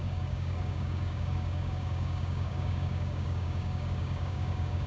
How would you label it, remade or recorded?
remade